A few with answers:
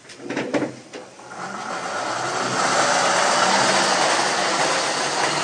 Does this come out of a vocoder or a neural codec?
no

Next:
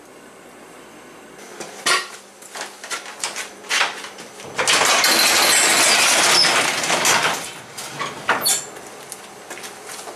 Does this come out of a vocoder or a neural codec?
no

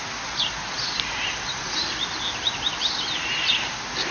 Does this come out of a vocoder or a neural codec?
no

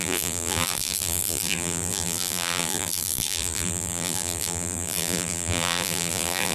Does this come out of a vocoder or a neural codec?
yes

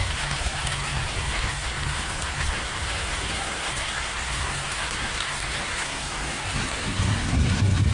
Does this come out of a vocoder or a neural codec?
yes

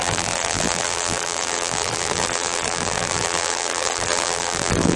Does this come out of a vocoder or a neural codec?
yes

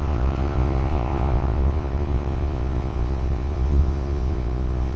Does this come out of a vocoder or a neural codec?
yes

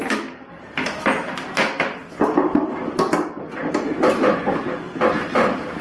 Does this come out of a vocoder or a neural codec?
no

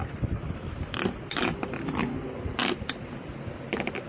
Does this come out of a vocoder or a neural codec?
no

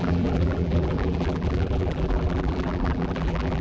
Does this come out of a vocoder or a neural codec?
yes